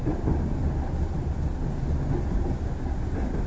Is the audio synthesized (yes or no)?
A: no